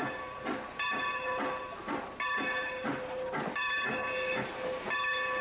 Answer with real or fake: real